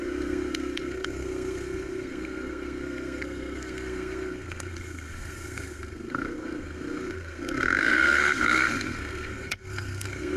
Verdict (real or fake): fake